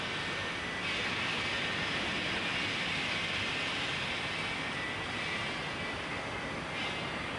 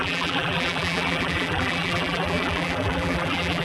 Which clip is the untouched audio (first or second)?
first